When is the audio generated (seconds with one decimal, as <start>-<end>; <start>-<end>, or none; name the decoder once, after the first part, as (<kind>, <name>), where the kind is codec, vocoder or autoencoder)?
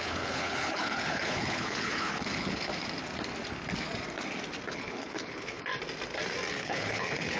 0.0-2.7 (codec, HILCodec); 4.7-5.7; 6.5-7.4